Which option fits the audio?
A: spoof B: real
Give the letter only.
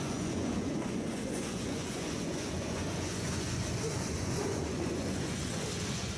A